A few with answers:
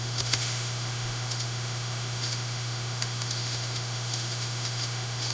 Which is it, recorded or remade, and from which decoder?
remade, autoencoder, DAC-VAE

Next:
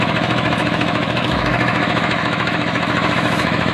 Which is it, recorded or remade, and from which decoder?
remade, autoencoder, DAC-VAE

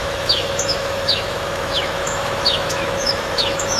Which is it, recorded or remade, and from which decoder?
remade, autoencoder, DAC-VAE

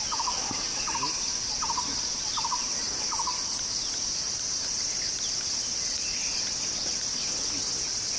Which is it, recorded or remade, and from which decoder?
recorded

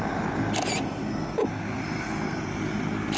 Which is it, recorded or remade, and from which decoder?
recorded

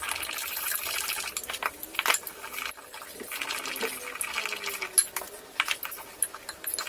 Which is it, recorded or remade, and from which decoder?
recorded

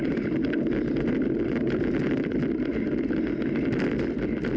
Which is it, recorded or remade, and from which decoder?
recorded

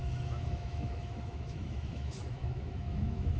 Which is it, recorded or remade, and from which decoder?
remade, autoencoder, DAC-VAE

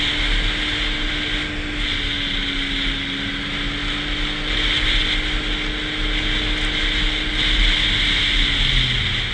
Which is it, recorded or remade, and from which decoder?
recorded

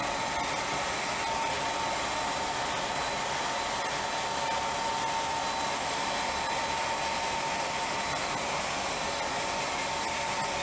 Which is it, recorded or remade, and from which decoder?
recorded